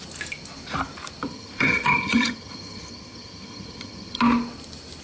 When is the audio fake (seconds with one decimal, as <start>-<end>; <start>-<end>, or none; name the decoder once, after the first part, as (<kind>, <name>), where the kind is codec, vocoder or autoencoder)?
1.3-4.2 (vocoder, HiFi-GAN)

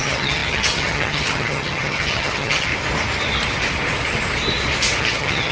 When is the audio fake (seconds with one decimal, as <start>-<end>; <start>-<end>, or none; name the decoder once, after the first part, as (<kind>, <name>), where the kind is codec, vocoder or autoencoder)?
0.0-2.7 (vocoder, HiFi-GAN); 5.0-5.5

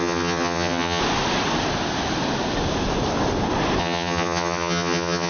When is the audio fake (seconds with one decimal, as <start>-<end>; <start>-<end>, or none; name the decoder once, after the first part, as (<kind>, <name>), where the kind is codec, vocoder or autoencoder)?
0.0-1.0 (vocoder, HiFi-GAN); 3.8-5.3

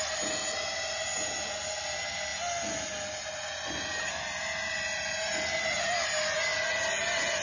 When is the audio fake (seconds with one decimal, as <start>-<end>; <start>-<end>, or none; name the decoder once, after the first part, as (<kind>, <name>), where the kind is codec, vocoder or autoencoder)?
none

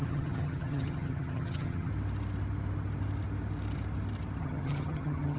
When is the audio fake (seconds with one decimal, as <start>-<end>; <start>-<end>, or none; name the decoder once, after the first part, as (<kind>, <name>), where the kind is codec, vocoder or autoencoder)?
0.0-1.9 (vocoder, HiFi-GAN); 4.4-5.4

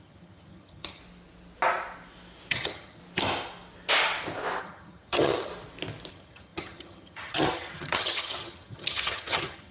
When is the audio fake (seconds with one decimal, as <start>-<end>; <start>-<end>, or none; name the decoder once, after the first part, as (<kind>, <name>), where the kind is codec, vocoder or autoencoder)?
0.0-1.0 (vocoder, HiFi-GAN); 2.5-3.0; 4.6-5.5; 6.1-9.7

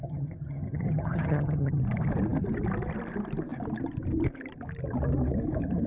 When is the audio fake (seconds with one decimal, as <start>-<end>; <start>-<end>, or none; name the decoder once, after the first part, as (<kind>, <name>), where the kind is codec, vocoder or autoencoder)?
0.0-1.8 (vocoder, HiFi-GAN)

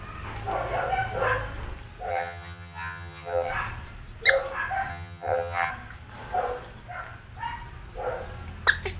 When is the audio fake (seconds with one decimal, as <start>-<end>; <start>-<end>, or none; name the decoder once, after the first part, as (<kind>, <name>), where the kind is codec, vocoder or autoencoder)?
2.1-3.5 (vocoder, HiFi-GAN); 4.9-5.7